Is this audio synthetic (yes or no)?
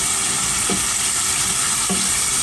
no